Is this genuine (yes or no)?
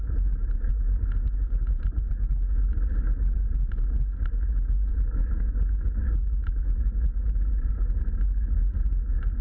yes